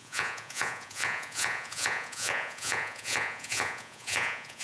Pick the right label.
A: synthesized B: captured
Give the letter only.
A